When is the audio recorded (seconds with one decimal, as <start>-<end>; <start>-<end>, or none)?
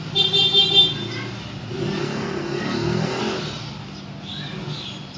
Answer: 0.0-2.0; 3.2-5.2